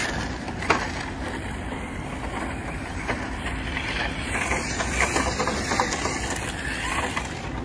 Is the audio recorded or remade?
recorded